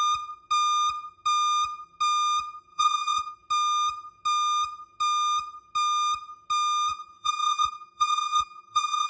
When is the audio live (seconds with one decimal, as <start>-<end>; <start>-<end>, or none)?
0.0-2.7; 3.3-6.9